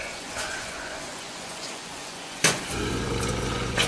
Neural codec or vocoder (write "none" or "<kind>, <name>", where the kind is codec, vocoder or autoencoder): vocoder, Vocos